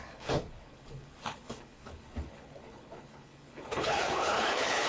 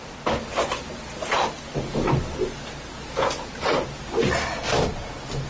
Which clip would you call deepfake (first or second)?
first